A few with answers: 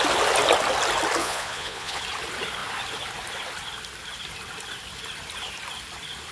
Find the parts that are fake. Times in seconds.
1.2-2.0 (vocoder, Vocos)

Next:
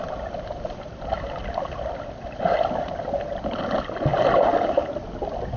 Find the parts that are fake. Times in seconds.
none